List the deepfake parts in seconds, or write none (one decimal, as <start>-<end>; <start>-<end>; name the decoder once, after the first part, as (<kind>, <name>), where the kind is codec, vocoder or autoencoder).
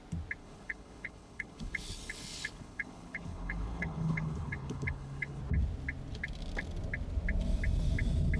0.4-5.4 (codec, HILCodec)